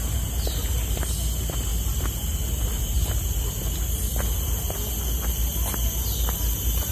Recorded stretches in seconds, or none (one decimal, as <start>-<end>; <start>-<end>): 0.0-6.9

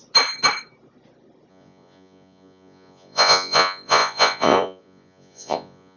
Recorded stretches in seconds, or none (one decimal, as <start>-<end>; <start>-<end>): 0.0-1.5

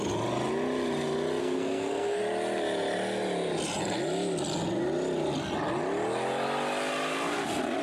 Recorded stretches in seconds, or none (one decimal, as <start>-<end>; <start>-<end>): 0.0-1.4; 2.2-7.8

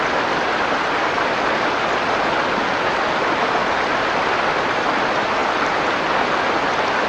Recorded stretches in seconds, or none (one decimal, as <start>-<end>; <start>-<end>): 0.0-7.1

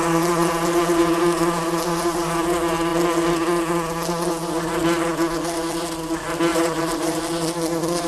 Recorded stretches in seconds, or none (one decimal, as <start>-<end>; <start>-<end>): 0.0-6.5; 7.2-8.1